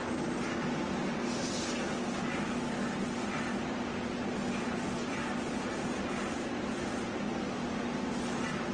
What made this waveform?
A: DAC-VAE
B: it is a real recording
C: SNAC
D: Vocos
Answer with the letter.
B